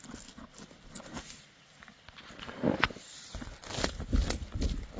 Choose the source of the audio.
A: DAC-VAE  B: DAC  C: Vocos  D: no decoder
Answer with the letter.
D